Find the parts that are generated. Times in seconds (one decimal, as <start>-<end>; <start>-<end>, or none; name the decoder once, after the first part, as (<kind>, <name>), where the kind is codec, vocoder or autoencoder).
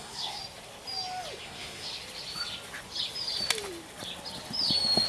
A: 0.0-0.4 (codec, SNAC); 1.4-1.9